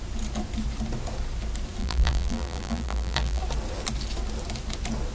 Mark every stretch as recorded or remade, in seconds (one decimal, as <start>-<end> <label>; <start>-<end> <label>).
0.0-1.8 recorded; 1.8-3.4 remade; 3.4-5.1 recorded